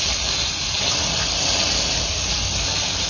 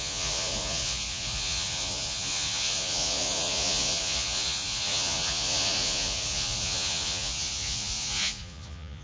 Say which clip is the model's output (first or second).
second